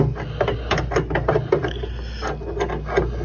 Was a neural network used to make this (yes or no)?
no